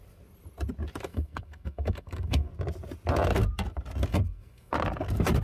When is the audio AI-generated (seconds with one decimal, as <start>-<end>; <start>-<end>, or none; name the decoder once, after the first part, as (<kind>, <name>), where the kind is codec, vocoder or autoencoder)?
1.1-2.5 (codec, SNAC); 4.1-4.7